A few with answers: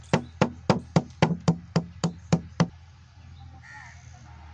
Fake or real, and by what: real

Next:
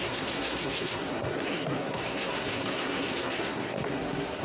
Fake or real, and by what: fake, codec, SNAC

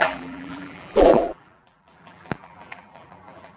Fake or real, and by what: fake, vocoder, BigVGAN v2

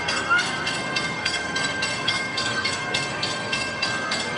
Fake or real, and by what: fake, codec, SNAC